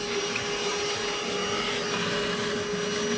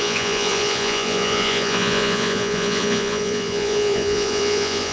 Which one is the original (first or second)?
first